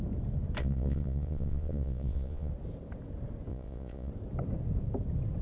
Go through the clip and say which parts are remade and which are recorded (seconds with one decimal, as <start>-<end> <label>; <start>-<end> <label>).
0.0-0.6 recorded; 0.6-2.5 remade; 2.5-3.5 recorded; 3.5-4.1 remade; 4.1-5.4 recorded